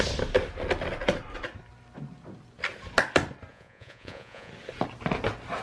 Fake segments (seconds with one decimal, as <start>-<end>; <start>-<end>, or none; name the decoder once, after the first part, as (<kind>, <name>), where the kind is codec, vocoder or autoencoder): 3.5-4.5 (vocoder, Vocos)